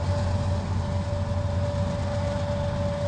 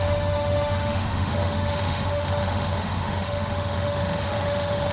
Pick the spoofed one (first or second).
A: second